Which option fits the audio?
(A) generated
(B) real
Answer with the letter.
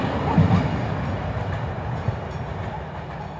B